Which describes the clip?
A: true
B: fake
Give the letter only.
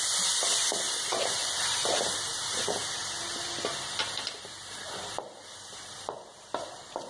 A